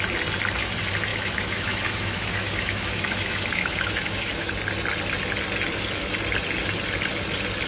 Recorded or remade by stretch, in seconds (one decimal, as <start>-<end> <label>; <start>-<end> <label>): 0.0-1.1 recorded; 1.1-4.5 remade; 4.5-7.7 recorded